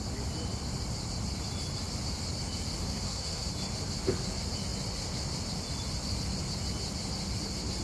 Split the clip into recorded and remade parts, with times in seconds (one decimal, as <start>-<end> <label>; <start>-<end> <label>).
0.0-2.8 recorded; 2.8-3.5 remade; 3.5-7.8 recorded